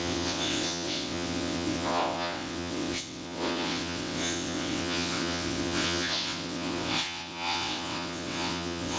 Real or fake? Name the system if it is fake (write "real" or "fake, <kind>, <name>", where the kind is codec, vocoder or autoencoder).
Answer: fake, vocoder, WaveNeXt